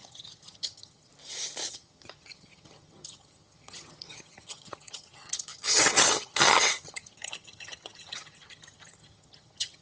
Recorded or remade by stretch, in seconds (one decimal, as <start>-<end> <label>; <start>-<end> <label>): 0.0-1.1 remade; 1.1-1.7 recorded; 1.7-9.8 remade